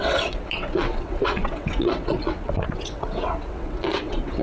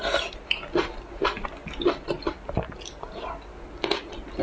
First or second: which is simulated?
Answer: first